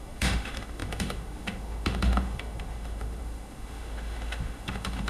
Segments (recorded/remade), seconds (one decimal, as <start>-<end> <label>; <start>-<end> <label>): 0.0-5.1 remade

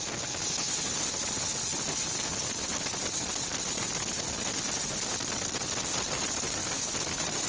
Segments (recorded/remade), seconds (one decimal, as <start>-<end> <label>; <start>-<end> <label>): 0.0-7.5 recorded

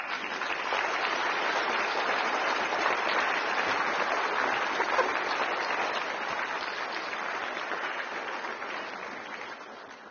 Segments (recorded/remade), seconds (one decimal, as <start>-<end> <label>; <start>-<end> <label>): 0.0-1.2 recorded; 1.2-3.5 remade; 3.5-10.1 recorded

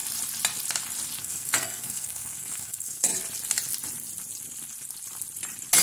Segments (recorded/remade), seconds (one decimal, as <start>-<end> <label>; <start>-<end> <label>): 0.0-1.2 recorded; 1.2-3.1 remade; 3.1-5.8 recorded

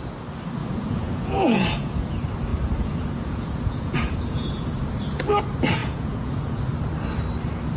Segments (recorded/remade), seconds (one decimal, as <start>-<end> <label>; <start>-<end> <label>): 0.0-0.6 recorded; 0.6-2.1 remade; 2.1-2.5 recorded; 2.5-4.7 remade; 4.7-5.8 recorded; 5.8-6.6 remade; 6.6-7.8 recorded